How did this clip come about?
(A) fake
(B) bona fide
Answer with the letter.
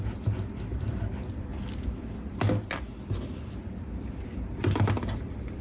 B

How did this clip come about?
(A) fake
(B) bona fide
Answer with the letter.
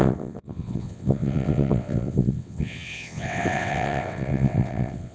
A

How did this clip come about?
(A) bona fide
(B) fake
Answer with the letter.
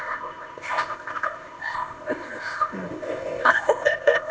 B